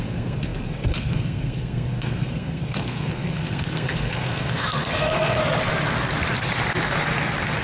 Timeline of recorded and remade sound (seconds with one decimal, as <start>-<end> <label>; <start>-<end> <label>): 0.0-5.4 remade; 5.4-7.6 recorded